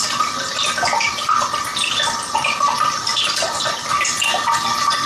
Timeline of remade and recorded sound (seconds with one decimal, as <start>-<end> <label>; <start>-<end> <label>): 0.0-5.1 recorded